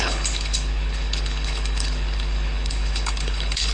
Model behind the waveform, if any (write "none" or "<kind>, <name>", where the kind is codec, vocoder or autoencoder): codec, HILCodec